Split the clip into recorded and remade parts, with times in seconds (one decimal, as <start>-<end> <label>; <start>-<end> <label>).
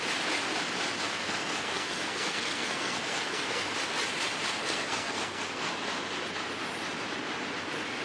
0.0-1.1 recorded; 1.1-3.7 remade; 3.7-4.6 recorded; 4.6-5.7 remade; 5.7-8.0 recorded